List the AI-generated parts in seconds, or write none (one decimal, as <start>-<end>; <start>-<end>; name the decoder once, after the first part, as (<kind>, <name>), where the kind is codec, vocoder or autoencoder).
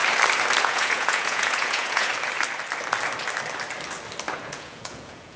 0.6-2.1 (vocoder, Vocos); 4.4-5.4